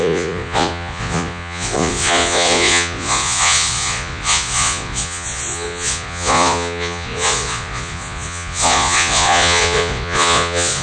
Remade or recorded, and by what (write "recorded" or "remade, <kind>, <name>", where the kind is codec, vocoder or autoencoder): remade, vocoder, Vocos